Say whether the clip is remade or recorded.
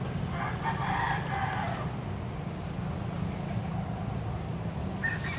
recorded